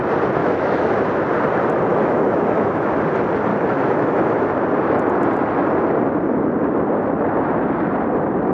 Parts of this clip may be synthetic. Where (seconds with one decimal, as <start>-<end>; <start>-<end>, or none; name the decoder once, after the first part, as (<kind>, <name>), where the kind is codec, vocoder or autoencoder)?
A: 0.4-0.9 (autoencoder, DAC-VAE); 1.9-2.9; 3.5-4.5